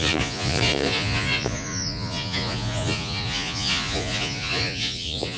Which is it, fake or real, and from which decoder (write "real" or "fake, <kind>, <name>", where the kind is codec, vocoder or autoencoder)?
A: fake, vocoder, Vocos